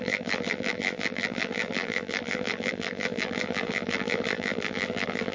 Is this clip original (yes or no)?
no